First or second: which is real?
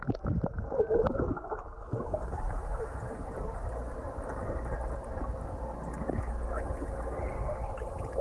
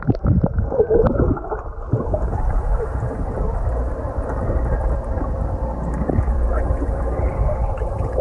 first